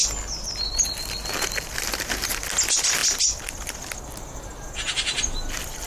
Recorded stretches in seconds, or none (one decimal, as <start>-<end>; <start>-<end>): 0.0-5.9